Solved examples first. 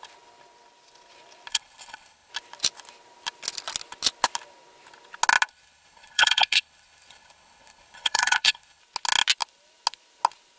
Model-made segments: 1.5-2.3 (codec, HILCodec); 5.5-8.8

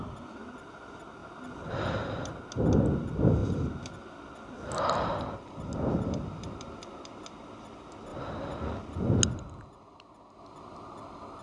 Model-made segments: none

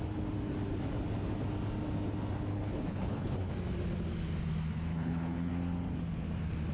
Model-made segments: 2.5-3.5 (codec, HILCodec); 4.9-5.5

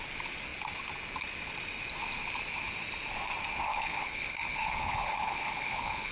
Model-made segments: 3.7-6.1 (codec, HILCodec)

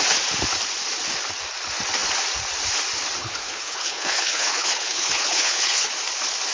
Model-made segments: 3.2-5.9 (codec, HILCodec)

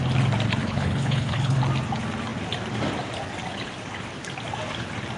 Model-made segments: 0.6-1.6 (codec, HILCodec)

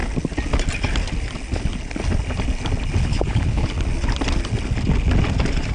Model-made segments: 3.1-3.7 (codec, HILCodec)